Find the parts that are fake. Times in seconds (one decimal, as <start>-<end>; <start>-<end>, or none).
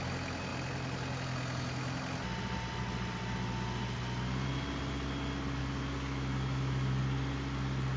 5.6-7.0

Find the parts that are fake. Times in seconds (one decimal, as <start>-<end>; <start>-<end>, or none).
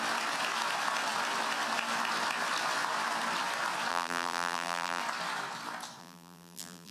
3.9-5.0; 6.0-6.9